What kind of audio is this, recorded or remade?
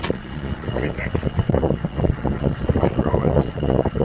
remade